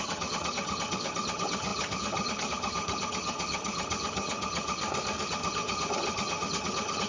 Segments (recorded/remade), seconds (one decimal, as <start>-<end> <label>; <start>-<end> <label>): 0.0-4.8 remade; 4.8-5.3 recorded; 5.3-7.1 remade